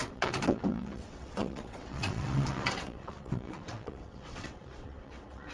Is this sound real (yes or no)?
no